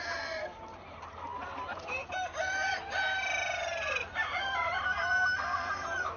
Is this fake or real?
real